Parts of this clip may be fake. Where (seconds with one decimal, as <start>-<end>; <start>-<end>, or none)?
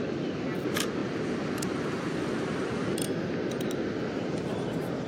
1.0-3.5